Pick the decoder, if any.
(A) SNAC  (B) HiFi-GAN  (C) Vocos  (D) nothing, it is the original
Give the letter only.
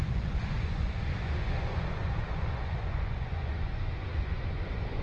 C